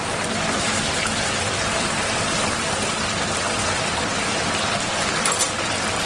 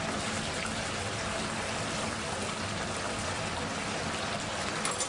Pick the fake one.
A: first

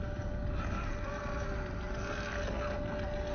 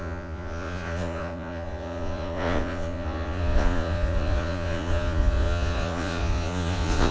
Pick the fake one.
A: second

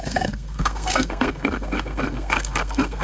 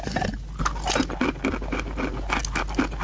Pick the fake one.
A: first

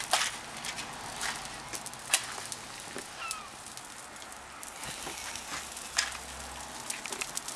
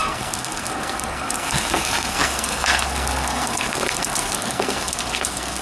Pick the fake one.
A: second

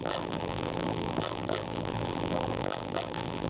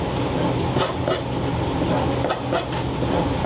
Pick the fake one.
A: first